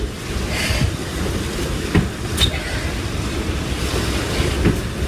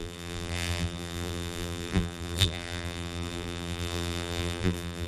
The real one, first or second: first